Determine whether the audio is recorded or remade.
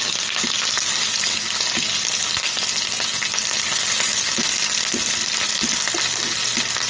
recorded